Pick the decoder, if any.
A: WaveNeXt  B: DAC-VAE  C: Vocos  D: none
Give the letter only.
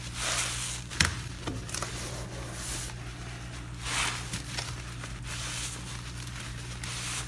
D